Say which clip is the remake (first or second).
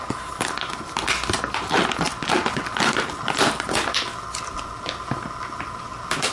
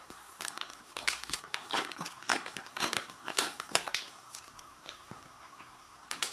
second